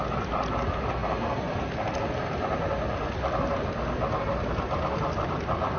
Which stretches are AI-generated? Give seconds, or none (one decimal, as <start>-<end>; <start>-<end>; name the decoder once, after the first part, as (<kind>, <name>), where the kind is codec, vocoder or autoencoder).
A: 0.0-1.0 (vocoder, BigVGAN v2); 4.5-5.8